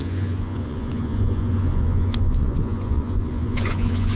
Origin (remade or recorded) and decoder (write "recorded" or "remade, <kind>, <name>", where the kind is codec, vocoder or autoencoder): remade, vocoder, Vocos